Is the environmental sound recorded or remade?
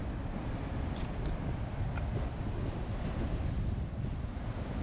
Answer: recorded